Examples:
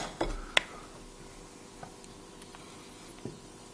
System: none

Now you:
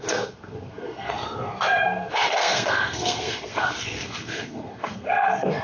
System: codec, SNAC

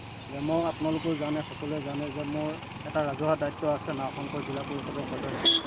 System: none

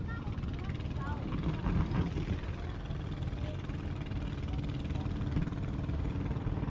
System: none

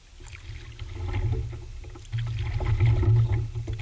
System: none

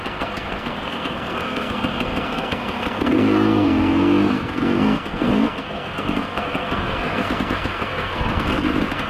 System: codec, SNAC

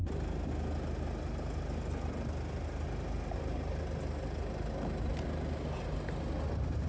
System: none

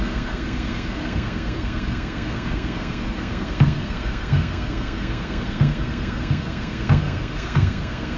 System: codec, SNAC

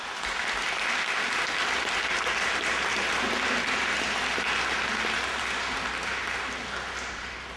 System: none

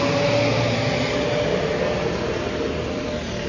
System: none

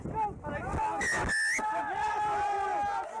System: none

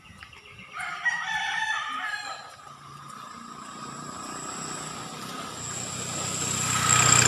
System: none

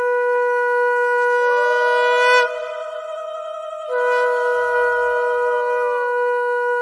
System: none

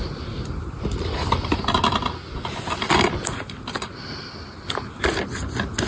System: none